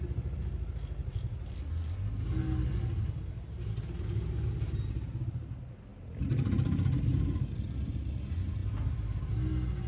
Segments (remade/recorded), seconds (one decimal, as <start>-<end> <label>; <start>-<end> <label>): 0.0-1.0 recorded; 1.0-1.6 remade; 1.6-5.9 recorded; 5.9-8.1 remade; 8.1-9.9 recorded